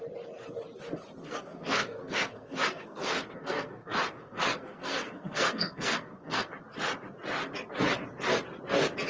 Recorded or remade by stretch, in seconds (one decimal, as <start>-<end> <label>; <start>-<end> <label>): 0.0-1.2 recorded; 1.2-6.5 remade; 6.5-9.1 recorded